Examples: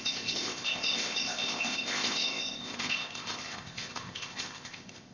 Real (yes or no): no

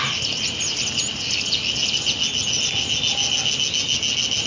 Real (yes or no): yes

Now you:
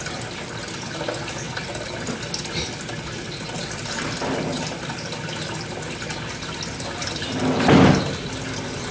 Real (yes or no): yes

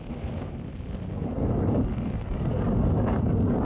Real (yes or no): yes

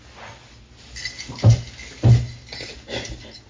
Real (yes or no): yes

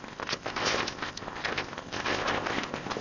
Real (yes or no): no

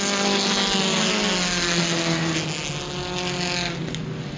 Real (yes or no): yes